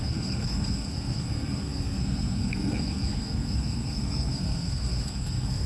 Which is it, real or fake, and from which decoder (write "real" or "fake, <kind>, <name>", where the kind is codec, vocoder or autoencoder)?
fake, codec, SNAC